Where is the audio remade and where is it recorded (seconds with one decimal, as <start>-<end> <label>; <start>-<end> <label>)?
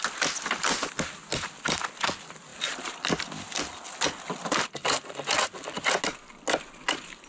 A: 0.0-2.5 recorded; 2.5-3.6 remade; 3.6-7.3 recorded